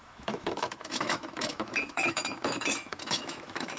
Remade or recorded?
remade